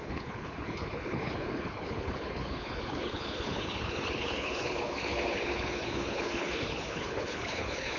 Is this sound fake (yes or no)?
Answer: yes